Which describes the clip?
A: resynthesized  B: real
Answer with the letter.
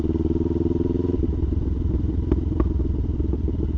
B